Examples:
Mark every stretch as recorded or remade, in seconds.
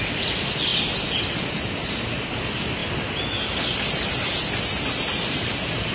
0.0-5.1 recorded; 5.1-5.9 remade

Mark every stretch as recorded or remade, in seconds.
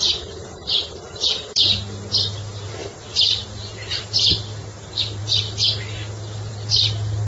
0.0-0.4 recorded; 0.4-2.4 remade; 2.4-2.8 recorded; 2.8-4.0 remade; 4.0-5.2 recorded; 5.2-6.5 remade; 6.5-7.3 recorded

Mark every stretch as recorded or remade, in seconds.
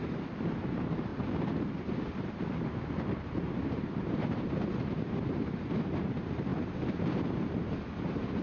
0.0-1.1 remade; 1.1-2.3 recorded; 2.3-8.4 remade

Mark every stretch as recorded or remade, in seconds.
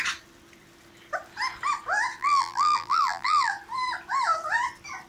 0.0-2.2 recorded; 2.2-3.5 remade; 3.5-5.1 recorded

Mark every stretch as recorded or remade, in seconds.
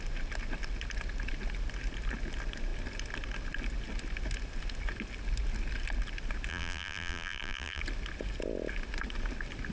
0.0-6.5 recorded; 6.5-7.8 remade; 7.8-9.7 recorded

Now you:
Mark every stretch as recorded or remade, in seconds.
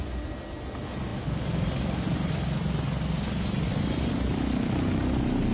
0.0-5.5 recorded